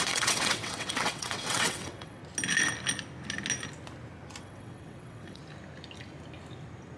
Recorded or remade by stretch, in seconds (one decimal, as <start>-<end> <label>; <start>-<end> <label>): 0.0-2.2 remade; 2.2-4.4 recorded; 4.4-5.4 remade; 5.4-7.0 recorded